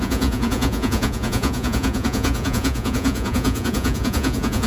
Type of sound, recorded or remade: remade